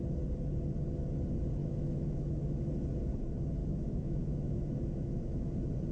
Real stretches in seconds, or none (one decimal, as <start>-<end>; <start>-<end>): 0.0-1.6; 2.7-3.6; 5.5-5.9